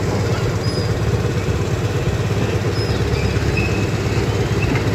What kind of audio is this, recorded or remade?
recorded